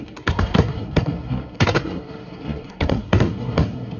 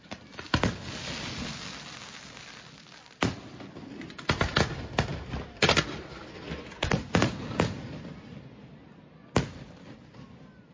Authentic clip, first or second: second